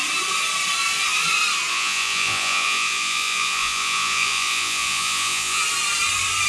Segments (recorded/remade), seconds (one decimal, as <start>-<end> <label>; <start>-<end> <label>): 0.0-1.7 recorded; 1.7-5.6 remade; 5.6-6.5 recorded